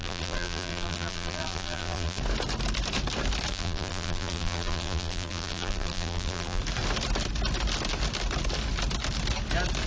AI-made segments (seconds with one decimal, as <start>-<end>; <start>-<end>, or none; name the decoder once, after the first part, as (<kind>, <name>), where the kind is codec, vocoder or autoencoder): 0.0-2.2 (vocoder, BigVGAN v2); 3.5-6.6